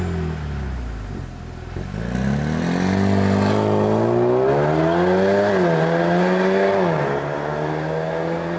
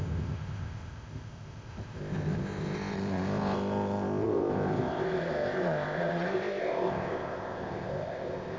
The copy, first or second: second